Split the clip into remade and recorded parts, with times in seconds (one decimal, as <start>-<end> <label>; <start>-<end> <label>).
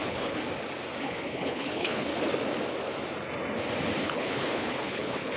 0.0-0.4 remade; 0.4-1.0 recorded; 1.0-2.1 remade; 2.1-4.0 recorded; 4.0-5.4 remade